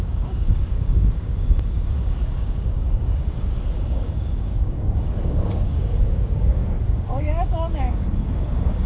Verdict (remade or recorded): remade